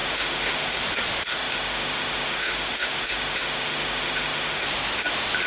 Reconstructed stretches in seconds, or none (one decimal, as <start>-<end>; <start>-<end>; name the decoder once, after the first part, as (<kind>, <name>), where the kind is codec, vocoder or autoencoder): 0.0-0.8 (autoencoder, DAC-VAE); 1.3-4.6